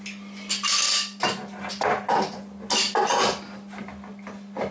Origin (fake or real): real